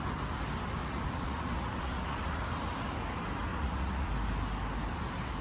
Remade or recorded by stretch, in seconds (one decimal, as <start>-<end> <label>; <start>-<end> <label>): 0.0-0.8 recorded; 0.8-2.4 remade; 2.4-3.5 recorded; 3.5-4.1 remade; 4.1-5.4 recorded